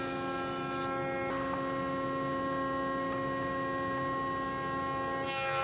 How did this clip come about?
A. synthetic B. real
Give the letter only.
B